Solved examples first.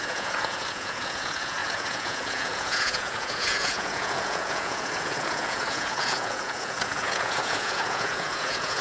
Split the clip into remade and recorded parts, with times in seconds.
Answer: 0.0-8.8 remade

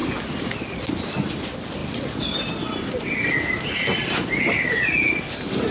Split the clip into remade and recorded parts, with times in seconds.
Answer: 0.0-5.7 recorded

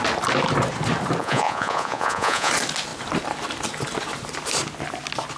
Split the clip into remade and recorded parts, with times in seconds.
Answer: 0.0-1.2 recorded; 1.2-2.5 remade; 2.5-5.4 recorded

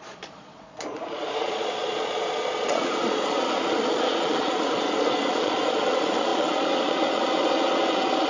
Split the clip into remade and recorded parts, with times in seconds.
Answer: 0.0-8.3 remade

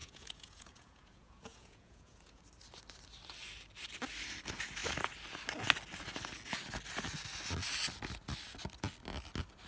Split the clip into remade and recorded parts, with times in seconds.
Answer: 0.0-2.4 remade; 2.4-9.7 recorded